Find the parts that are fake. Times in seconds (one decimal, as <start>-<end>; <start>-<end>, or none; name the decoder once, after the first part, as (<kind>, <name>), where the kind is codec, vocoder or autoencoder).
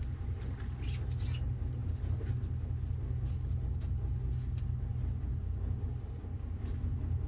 none